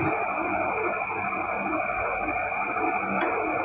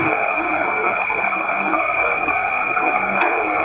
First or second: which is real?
first